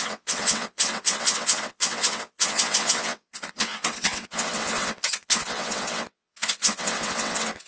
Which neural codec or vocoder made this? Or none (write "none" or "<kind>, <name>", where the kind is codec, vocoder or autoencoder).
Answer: vocoder, WaveNeXt